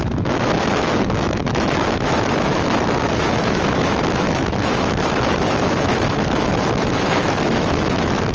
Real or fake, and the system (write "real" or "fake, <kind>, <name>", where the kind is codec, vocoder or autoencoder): fake, autoencoder, DAC-VAE